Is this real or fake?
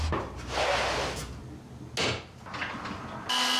real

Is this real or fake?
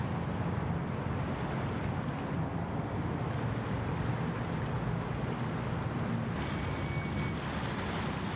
real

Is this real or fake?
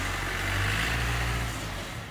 real